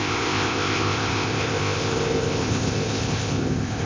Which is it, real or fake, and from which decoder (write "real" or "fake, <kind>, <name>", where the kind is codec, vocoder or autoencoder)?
fake, codec, ZipCodec